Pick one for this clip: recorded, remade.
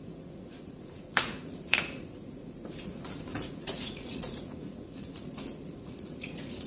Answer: remade